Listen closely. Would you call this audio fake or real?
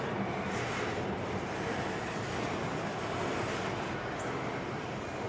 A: real